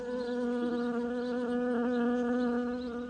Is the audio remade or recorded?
recorded